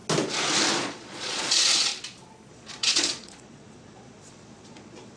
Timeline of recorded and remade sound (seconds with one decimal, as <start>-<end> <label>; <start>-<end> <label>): 0.0-0.8 recorded; 0.8-1.9 remade; 1.9-2.5 recorded; 2.5-5.2 remade